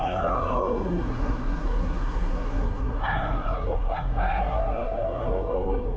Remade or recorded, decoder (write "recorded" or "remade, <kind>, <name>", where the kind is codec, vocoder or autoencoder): remade, codec, SNAC